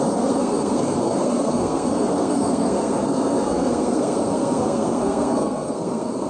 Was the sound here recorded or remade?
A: remade